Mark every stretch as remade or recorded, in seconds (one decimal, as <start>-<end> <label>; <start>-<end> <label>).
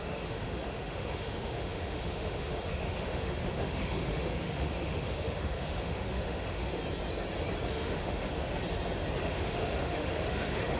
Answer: 0.0-6.8 remade; 6.8-7.7 recorded; 7.7-8.6 remade; 8.6-9.2 recorded; 9.2-10.8 remade